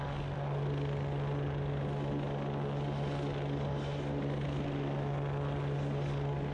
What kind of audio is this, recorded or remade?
recorded